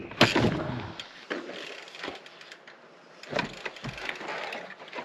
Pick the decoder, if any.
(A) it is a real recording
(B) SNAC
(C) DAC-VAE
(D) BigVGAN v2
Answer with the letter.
A